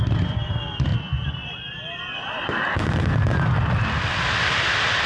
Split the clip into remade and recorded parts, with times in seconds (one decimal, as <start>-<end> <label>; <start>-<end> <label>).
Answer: 0.0-5.1 remade